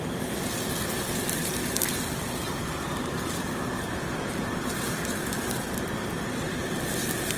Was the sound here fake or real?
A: real